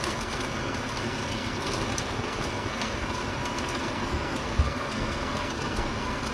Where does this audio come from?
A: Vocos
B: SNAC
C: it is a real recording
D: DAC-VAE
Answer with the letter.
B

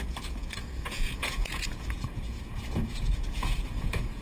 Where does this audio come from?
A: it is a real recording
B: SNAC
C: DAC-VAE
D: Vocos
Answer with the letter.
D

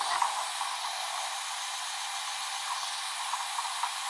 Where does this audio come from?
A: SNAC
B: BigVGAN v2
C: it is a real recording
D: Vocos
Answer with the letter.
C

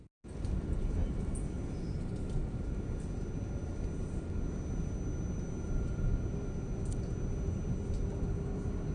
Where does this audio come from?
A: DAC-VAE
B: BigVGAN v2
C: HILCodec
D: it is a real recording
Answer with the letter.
D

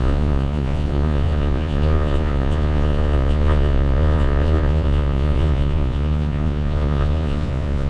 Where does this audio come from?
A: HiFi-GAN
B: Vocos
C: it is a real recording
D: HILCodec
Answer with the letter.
B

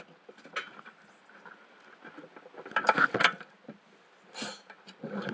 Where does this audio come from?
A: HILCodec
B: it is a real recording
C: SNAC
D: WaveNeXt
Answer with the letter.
B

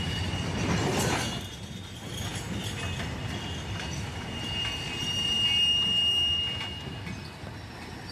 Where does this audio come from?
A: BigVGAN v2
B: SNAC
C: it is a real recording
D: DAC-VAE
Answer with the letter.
C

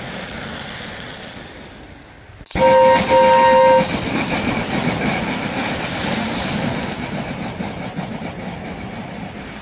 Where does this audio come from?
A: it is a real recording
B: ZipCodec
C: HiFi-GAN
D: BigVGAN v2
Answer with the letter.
A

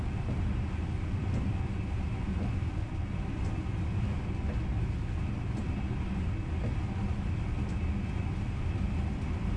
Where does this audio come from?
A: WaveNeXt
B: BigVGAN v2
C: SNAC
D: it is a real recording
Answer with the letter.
D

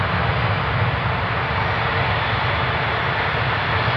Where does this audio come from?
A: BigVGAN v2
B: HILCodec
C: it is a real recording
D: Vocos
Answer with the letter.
C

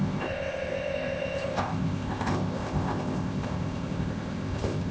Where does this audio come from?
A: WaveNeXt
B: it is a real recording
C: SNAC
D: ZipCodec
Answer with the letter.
D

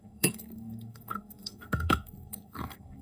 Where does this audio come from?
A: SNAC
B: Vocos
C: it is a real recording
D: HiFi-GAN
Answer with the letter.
A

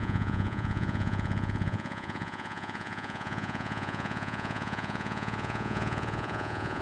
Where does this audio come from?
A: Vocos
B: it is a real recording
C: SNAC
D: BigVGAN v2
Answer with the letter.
A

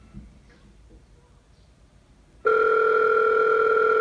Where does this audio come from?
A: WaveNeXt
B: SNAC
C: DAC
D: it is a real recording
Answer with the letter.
D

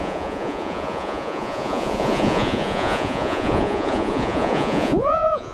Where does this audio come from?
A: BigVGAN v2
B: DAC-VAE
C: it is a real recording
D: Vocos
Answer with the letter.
D